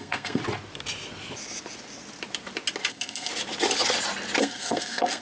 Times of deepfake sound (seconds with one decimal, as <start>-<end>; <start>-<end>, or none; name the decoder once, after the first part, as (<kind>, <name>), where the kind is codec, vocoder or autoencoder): 0.0-0.4 (codec, SNAC); 2.9-3.3; 4.4-5.2